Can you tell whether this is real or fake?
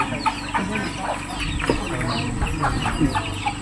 real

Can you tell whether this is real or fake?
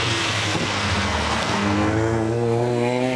fake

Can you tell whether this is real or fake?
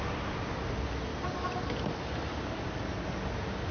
real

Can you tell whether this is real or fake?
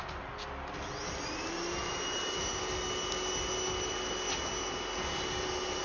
real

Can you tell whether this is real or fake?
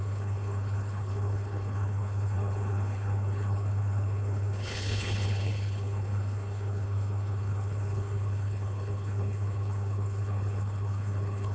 fake